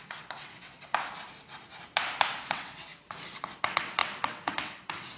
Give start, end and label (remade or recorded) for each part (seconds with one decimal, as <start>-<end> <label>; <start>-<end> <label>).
0.0-0.9 remade; 0.9-2.5 recorded; 2.5-2.9 remade; 2.9-3.6 recorded; 3.6-5.2 remade